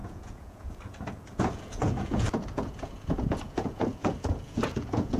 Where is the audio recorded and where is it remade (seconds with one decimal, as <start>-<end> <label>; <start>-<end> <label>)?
0.0-5.2 remade